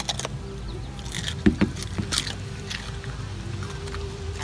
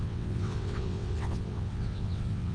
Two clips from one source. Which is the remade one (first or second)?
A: second